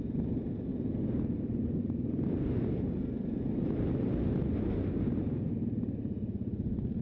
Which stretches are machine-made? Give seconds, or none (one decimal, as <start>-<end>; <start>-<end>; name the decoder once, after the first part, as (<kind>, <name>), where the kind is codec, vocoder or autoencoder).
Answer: none